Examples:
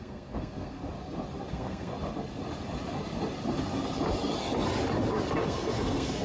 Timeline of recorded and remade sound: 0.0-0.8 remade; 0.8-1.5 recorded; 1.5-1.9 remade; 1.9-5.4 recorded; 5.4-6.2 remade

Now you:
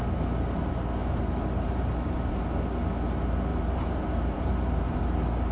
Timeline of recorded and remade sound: 0.0-1.0 recorded; 1.0-2.4 remade; 2.4-3.5 recorded; 3.5-5.0 remade; 5.0-5.5 recorded

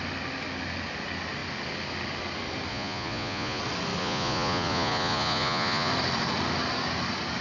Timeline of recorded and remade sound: 0.0-2.7 recorded; 2.7-3.6 remade; 3.6-4.0 recorded; 4.0-5.9 remade; 5.9-7.4 recorded

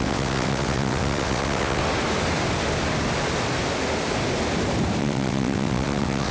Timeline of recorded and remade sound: 0.0-1.8 remade; 1.8-5.0 recorded; 5.0-6.3 remade

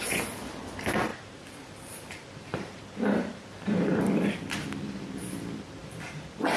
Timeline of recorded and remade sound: 0.0-1.1 recorded; 1.1-4.0 remade; 4.0-5.8 recorded; 5.8-6.6 remade

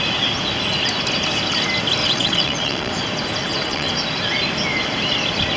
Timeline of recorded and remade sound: 0.0-2.0 recorded; 2.0-2.9 remade; 2.9-3.4 recorded; 3.4-3.9 remade; 3.9-5.6 recorded

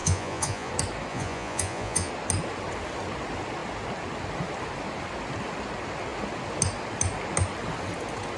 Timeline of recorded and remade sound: 0.0-0.7 remade; 0.7-1.1 recorded; 1.1-2.1 remade; 2.1-8.4 recorded

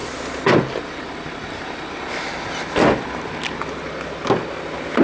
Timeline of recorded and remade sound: 0.0-5.0 recorded